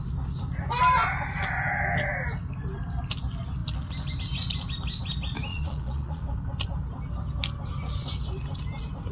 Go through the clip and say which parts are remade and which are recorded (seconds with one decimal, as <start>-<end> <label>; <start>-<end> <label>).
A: 0.0-5.5 recorded; 5.5-6.2 remade; 6.2-9.1 recorded